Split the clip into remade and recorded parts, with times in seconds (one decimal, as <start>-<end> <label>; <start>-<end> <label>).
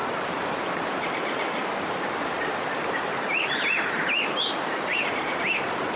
0.0-3.1 remade; 3.1-6.0 recorded